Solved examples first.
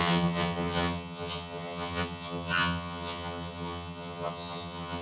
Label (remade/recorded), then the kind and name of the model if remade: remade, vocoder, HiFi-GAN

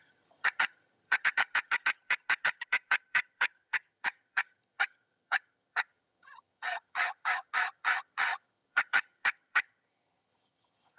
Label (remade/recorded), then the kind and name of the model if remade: remade, vocoder, HiFi-GAN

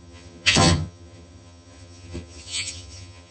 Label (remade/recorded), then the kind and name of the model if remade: remade, vocoder, HiFi-GAN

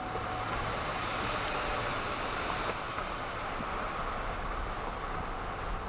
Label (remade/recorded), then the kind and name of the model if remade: recorded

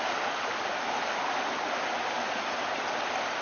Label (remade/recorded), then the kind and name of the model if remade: recorded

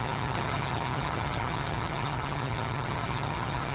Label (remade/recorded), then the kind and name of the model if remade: remade, vocoder, HiFi-GAN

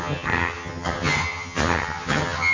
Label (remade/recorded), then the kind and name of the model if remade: remade, vocoder, HiFi-GAN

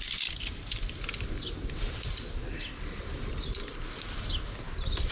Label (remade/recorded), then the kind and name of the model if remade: recorded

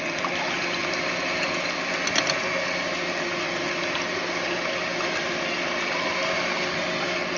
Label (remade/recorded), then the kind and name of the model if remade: recorded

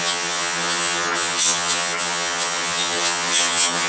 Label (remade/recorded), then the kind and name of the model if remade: remade, vocoder, HiFi-GAN